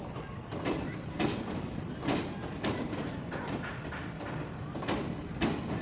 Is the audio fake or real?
real